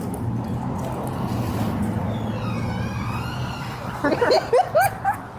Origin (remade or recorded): recorded